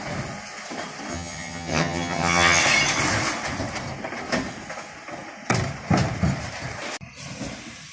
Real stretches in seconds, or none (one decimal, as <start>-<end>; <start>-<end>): 0.0-1.1; 2.6-7.9

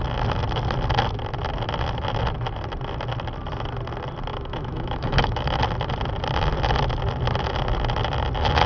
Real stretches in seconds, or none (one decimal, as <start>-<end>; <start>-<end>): 0.0-4.3; 5.6-8.7